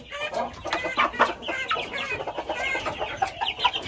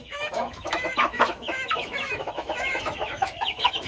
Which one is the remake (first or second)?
second